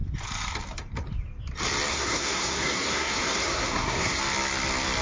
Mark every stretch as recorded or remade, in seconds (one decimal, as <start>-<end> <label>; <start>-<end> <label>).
0.0-1.9 recorded; 1.9-4.2 remade; 4.2-5.0 recorded